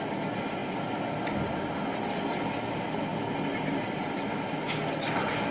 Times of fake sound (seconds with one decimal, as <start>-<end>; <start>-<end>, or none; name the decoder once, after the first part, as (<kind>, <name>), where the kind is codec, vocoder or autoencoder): none